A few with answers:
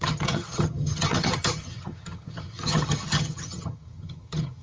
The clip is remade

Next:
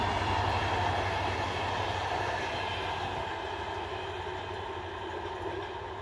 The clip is recorded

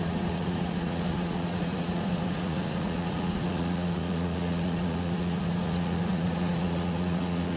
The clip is remade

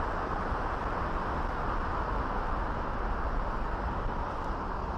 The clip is recorded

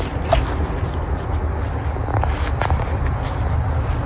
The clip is recorded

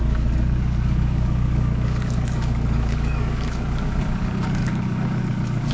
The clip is remade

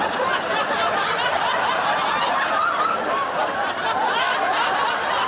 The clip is recorded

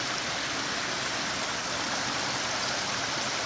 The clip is recorded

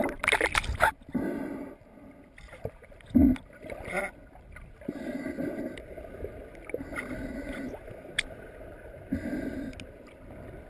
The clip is recorded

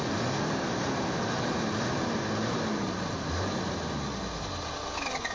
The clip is recorded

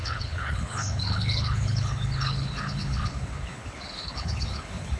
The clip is remade